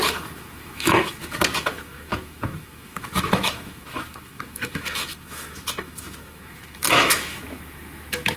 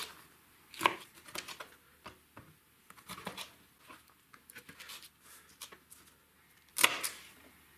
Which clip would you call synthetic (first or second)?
first